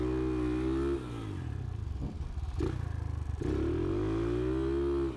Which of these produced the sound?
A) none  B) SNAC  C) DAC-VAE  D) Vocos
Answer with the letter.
A